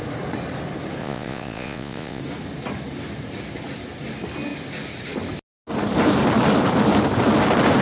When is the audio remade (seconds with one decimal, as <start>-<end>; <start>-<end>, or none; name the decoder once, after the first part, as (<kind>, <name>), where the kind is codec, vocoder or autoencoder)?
1.0-2.2 (vocoder, Vocos)